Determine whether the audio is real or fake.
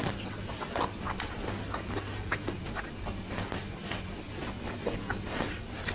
real